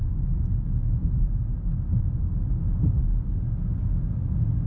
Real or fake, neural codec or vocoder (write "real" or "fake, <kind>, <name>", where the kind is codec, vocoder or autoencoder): real